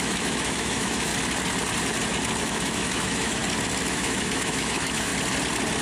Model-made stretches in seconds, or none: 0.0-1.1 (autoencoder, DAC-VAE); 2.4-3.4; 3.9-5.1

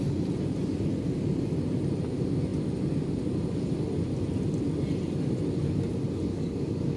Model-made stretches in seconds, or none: 6.3-7.0 (codec, DAC)